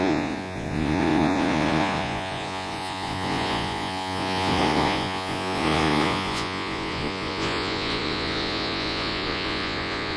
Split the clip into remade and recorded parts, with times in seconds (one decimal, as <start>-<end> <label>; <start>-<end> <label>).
0.0-10.2 remade